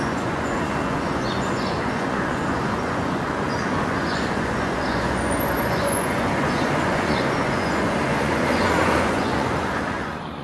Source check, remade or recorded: remade